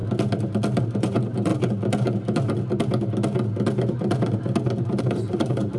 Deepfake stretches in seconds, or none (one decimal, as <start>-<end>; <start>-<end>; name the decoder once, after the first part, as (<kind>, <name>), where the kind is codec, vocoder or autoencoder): 0.8-1.5 (vocoder, BigVGAN v2); 5.0-5.8